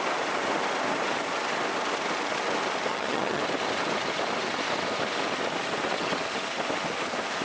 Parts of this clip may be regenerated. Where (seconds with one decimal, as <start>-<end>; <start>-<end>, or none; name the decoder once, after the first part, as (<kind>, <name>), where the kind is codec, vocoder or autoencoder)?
2.9-3.4 (vocoder, HiFi-GAN)